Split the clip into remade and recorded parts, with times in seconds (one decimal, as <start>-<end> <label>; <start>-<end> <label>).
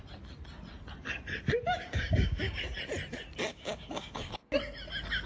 0.0-1.7 recorded; 1.7-2.6 remade; 2.6-3.5 recorded; 3.5-4.5 remade; 4.5-5.3 recorded